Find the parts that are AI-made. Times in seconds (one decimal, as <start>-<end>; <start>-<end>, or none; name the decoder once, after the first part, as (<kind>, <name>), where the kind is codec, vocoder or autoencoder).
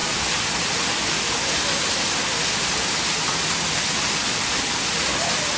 none